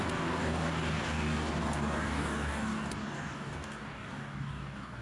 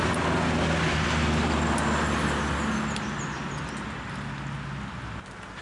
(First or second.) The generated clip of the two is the first